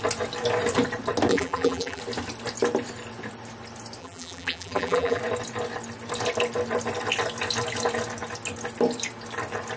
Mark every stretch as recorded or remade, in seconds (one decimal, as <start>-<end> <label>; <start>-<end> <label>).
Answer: 0.0-1.3 recorded; 1.3-2.0 remade; 2.0-4.0 recorded; 4.0-5.2 remade; 5.2-9.8 recorded

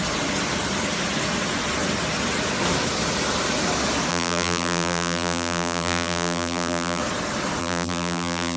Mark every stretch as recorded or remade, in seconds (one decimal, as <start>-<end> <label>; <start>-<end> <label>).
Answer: 0.0-4.1 recorded; 4.1-7.0 remade; 7.0-7.6 recorded; 7.6-8.6 remade

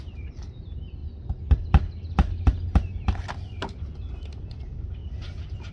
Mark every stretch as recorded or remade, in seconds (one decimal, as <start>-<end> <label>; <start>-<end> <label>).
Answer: 0.0-5.7 recorded

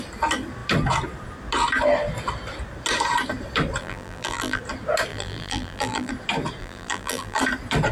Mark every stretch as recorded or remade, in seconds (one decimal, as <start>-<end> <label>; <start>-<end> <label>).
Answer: 0.0-3.8 recorded; 3.8-4.6 remade; 4.6-5.1 recorded; 5.1-6.1 remade; 6.1-6.6 recorded; 6.6-7.4 remade; 7.4-7.9 recorded

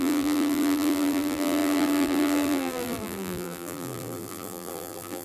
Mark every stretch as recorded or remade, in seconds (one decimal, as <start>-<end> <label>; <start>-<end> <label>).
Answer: 0.0-5.2 remade